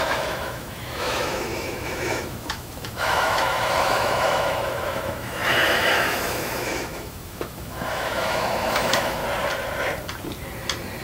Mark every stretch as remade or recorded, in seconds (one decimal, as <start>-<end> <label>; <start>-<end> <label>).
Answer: 0.0-9.2 remade; 9.2-11.0 recorded